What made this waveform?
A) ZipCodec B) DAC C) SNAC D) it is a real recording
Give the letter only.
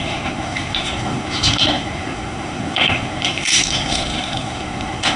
C